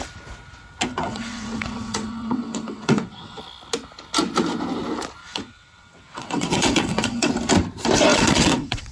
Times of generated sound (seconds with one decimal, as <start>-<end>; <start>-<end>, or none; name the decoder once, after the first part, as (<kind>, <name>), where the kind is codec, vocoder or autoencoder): 0.9-3.4 (vocoder, WaveNeXt); 5.2-7.3; 8.1-8.9